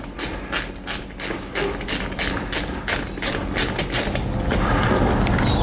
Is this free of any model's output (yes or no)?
yes